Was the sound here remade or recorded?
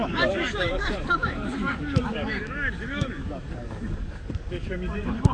remade